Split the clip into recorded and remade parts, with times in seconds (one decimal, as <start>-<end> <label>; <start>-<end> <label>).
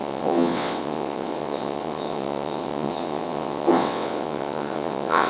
0.0-5.3 remade